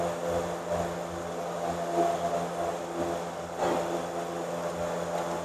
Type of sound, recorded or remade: recorded